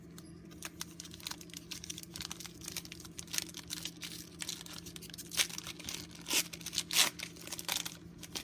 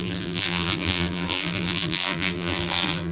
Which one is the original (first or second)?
first